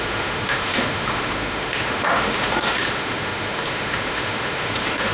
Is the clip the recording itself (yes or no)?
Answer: no